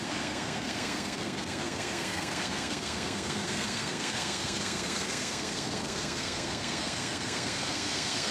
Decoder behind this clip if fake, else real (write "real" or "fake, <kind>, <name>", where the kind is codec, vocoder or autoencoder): fake, codec, SNAC